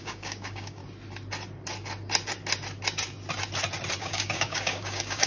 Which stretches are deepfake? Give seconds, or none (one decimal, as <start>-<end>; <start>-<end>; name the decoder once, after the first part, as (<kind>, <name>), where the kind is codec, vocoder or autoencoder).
0.0-0.8 (codec, DAC); 4.0-5.3